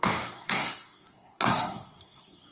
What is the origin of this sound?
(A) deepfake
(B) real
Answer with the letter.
A